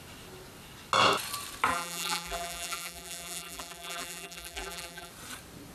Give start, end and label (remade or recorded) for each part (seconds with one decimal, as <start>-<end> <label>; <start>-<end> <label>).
0.0-1.7 recorded; 1.7-5.1 remade; 5.1-5.7 recorded